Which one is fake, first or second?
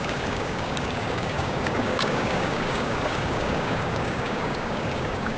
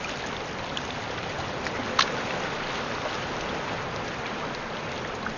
first